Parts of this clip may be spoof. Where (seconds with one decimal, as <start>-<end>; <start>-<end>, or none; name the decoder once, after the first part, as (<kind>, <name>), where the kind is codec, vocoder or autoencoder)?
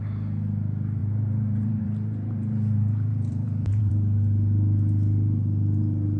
1.0-3.9 (vocoder, BigVGAN v2)